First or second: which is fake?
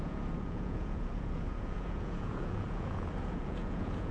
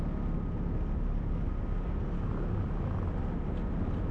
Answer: first